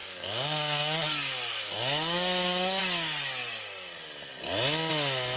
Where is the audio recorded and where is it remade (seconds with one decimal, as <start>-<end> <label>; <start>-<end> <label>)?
0.0-2.8 remade; 2.8-5.4 recorded

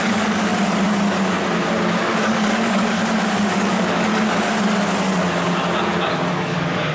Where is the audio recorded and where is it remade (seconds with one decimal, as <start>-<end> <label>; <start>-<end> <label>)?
0.0-0.5 remade; 0.5-1.9 recorded; 1.9-3.0 remade; 3.0-3.5 recorded; 3.5-4.1 remade; 4.1-6.3 recorded; 6.3-6.9 remade

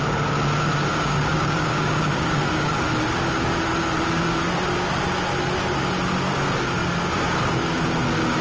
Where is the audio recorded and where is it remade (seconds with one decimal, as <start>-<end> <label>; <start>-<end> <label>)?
0.0-0.9 recorded; 0.9-2.7 remade; 2.7-8.4 recorded

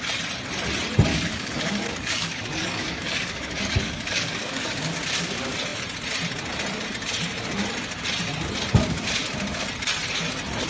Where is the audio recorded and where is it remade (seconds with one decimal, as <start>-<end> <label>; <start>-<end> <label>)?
0.0-1.1 recorded; 1.1-4.9 remade; 4.9-10.7 recorded

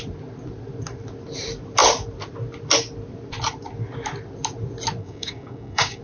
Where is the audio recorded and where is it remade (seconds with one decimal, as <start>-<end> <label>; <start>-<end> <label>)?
0.0-5.0 recorded; 5.0-6.0 remade

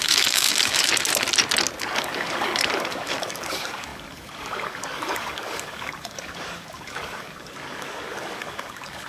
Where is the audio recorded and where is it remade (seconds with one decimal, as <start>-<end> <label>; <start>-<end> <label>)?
0.0-0.9 remade; 0.9-1.8 recorded; 1.8-9.1 remade

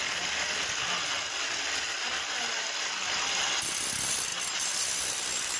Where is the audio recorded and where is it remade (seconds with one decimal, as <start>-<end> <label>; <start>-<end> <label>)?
0.0-5.6 recorded

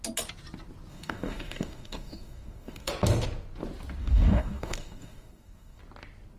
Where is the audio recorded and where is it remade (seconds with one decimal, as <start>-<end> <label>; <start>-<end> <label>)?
0.0-0.9 recorded; 0.9-2.9 remade; 2.9-4.0 recorded; 4.0-5.8 remade; 5.8-6.4 recorded